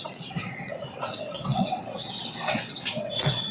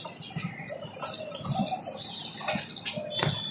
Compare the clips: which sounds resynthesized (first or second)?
first